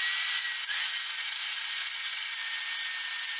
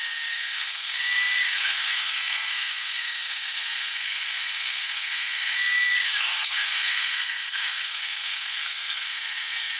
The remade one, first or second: second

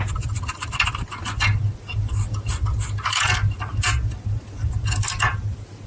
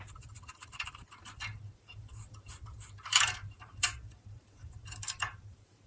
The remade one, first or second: second